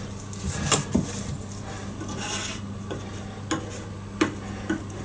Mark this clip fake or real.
real